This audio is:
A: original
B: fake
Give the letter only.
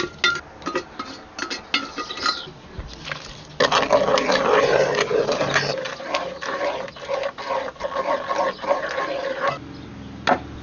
A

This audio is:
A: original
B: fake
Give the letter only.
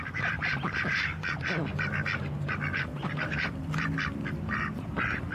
B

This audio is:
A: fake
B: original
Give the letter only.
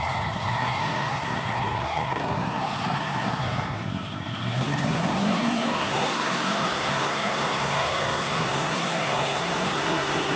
A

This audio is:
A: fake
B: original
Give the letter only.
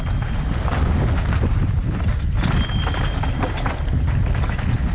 B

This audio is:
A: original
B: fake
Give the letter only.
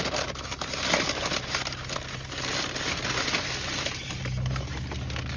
A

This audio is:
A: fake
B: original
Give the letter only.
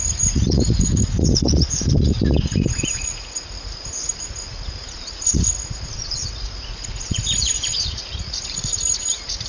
A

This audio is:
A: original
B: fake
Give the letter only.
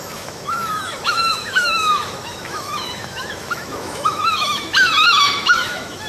B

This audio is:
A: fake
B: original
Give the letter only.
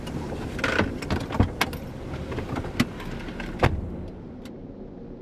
B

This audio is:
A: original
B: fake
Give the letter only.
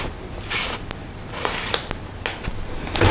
A